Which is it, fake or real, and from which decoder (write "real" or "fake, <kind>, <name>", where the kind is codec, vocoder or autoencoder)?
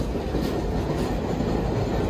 real